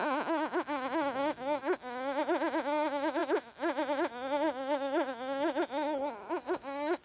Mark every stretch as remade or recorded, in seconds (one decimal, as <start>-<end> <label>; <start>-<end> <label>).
0.0-7.0 recorded